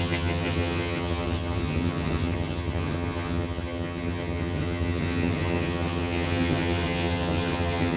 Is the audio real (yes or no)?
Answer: no